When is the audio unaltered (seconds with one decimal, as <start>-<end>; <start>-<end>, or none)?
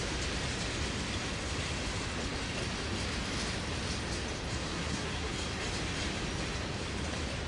0.0-4.7; 5.3-7.5